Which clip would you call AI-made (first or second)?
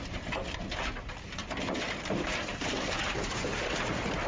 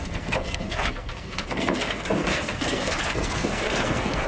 second